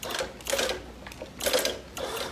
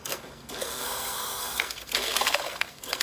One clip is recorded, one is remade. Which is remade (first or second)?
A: second